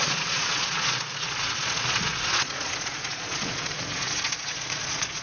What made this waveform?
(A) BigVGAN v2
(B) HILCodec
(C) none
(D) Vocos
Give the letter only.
D